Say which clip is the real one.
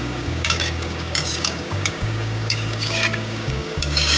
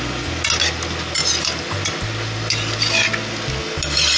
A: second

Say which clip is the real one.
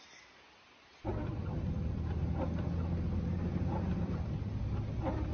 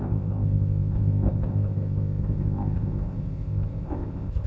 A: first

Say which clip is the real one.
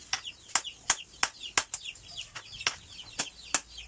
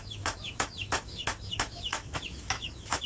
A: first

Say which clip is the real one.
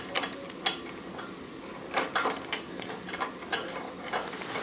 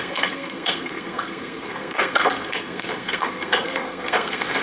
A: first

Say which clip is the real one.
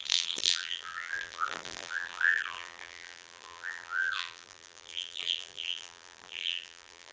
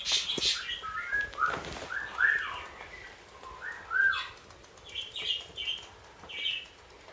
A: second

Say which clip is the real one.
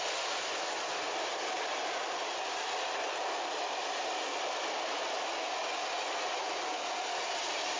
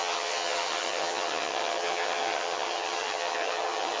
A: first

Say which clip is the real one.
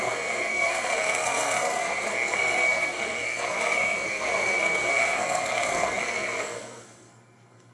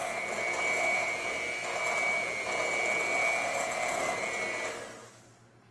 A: second